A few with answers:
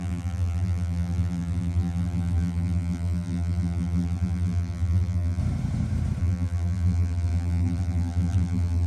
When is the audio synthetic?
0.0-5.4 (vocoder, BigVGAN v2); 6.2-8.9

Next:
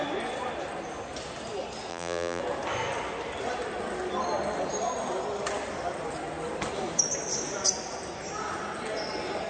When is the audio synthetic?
1.9-2.4 (vocoder, BigVGAN v2)

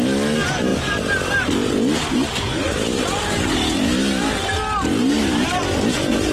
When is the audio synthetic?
5.0-5.6 (vocoder, BigVGAN v2)